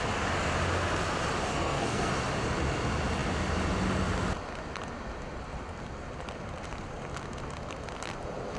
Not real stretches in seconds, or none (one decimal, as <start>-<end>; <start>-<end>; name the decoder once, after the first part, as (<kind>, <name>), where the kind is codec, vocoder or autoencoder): 1.5-2.1 (codec, SNAC)